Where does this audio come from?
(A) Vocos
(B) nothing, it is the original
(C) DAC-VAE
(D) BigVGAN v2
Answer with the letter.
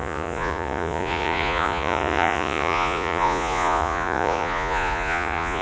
A